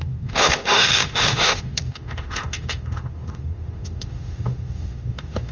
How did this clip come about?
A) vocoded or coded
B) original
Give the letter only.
A